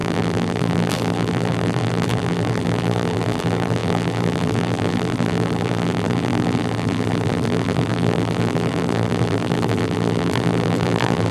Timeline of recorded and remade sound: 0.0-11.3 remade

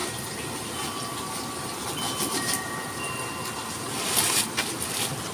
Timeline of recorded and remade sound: 0.0-5.3 recorded

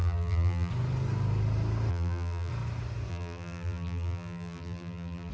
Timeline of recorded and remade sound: 0.0-0.7 remade; 0.7-1.9 recorded; 1.9-2.5 remade; 2.5-3.1 recorded; 3.1-5.3 remade

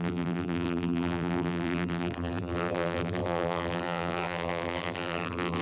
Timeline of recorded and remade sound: 0.0-5.6 remade

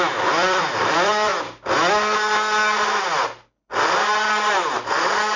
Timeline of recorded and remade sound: 0.0-1.3 remade; 1.3-4.5 recorded; 4.5-5.4 remade

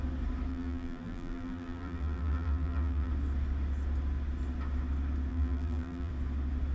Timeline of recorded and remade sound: 0.0-0.5 recorded; 0.5-3.1 remade; 3.1-5.3 recorded; 5.3-6.1 remade; 6.1-6.7 recorded

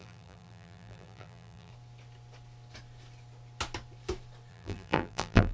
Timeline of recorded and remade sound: 0.0-1.7 remade; 1.7-4.5 recorded; 4.5-5.5 remade